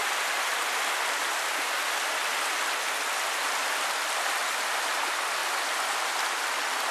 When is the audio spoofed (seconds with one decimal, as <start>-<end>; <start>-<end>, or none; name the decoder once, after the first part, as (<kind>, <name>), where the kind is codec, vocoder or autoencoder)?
none